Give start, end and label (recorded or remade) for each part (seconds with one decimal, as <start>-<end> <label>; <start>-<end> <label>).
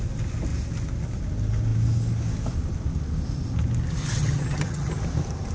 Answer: 0.0-4.0 recorded; 4.0-4.9 remade; 4.9-5.5 recorded